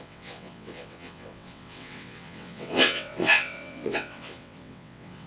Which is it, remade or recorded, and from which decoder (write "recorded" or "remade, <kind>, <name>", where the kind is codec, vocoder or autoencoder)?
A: remade, vocoder, WaveNeXt